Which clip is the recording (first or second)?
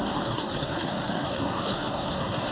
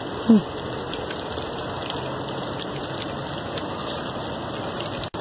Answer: second